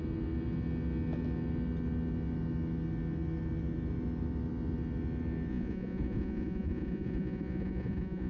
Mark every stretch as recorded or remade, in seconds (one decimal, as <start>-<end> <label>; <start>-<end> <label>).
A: 0.0-5.5 recorded; 5.5-8.3 remade